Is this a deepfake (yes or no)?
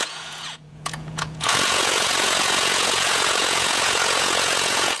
yes